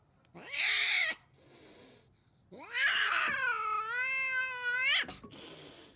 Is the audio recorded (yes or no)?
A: yes